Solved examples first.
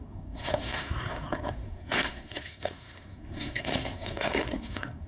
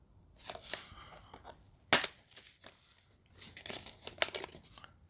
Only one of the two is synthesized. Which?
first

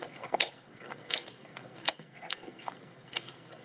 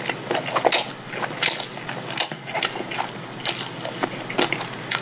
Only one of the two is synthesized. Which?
first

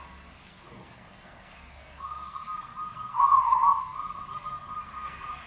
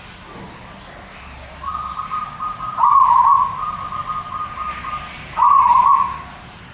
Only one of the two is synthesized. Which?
first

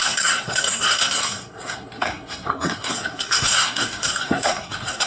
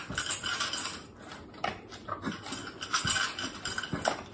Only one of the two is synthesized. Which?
first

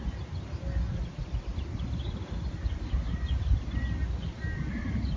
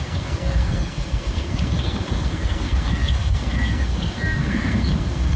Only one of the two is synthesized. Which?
second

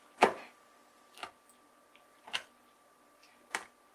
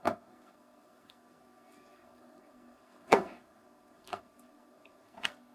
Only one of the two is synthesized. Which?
second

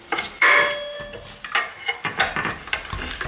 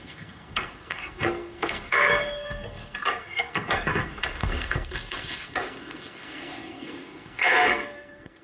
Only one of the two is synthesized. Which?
second